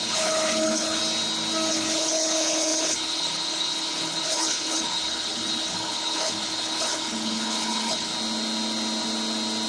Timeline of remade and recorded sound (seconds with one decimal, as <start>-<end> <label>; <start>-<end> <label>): 0.0-1.0 remade; 1.0-1.7 recorded; 1.7-8.1 remade; 8.1-9.7 recorded

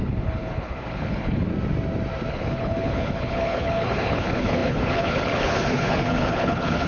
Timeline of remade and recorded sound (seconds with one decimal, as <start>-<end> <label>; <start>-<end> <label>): 0.0-1.5 remade; 1.5-2.3 recorded; 2.3-6.9 remade

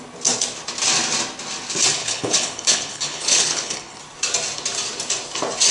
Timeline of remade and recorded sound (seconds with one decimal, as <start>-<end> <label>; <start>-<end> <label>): 0.0-2.0 recorded; 2.0-4.0 remade; 4.0-5.7 recorded

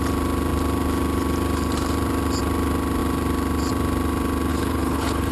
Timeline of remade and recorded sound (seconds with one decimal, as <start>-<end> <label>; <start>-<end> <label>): 0.0-4.5 recorded; 4.5-5.3 remade

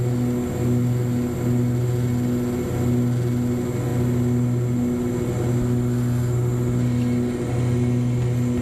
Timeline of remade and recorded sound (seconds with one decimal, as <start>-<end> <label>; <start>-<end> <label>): 0.0-8.6 recorded

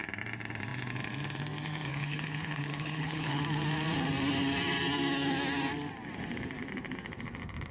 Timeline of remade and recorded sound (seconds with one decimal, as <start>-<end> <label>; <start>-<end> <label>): 0.0-1.9 recorded; 1.9-3.4 remade; 3.4-7.7 recorded